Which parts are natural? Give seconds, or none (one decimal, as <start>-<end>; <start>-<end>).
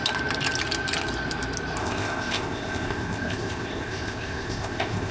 0.0-1.8